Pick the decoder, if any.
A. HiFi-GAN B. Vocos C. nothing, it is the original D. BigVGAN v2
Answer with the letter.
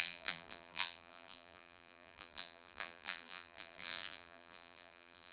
D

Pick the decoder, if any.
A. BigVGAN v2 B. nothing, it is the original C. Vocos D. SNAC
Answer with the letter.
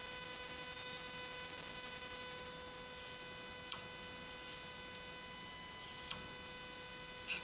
B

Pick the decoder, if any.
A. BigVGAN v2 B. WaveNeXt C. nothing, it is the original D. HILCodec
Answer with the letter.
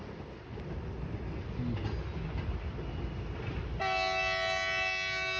C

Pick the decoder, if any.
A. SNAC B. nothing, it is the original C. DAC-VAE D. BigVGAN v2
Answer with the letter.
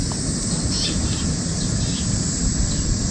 B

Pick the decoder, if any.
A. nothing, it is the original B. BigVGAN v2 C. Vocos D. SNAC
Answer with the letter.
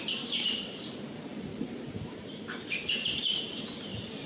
B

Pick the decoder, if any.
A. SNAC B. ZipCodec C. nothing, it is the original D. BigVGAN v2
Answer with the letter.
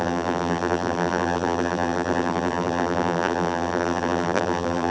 D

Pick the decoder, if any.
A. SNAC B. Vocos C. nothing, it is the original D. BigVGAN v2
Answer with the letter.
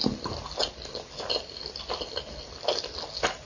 C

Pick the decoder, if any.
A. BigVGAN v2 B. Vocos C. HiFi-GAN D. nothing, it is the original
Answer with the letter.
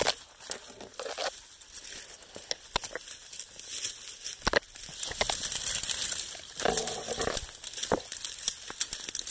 D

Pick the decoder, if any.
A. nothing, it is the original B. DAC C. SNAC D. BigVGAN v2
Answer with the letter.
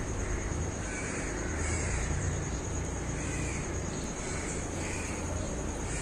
D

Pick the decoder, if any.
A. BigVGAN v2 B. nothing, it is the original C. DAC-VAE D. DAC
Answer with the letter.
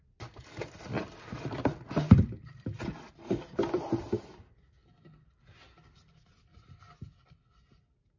A